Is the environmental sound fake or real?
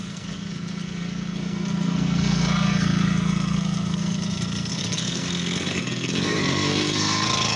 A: fake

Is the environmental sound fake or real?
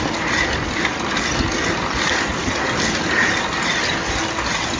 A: real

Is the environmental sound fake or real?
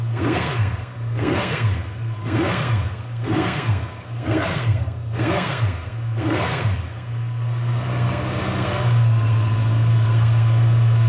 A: fake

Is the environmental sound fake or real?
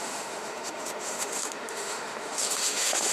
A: fake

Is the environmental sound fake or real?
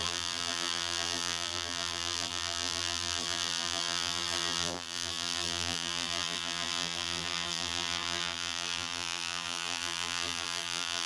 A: fake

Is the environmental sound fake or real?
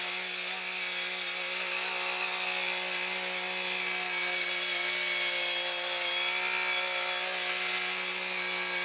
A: real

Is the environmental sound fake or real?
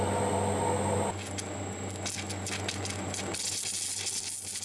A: real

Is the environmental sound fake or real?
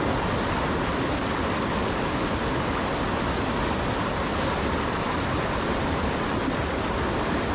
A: real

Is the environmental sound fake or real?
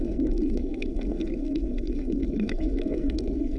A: fake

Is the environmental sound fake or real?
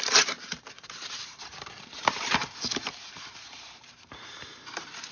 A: fake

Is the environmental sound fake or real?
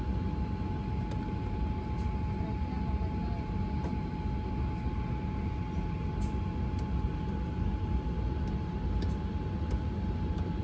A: real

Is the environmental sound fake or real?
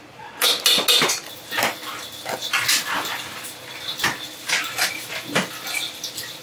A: real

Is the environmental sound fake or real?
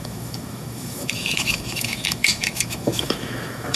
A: fake